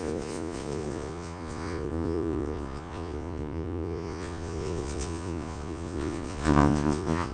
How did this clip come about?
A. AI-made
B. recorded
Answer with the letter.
A